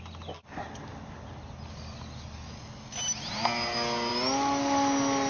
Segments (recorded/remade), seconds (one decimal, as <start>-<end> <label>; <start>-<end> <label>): 0.0-5.3 recorded